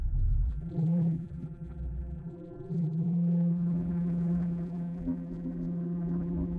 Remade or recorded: remade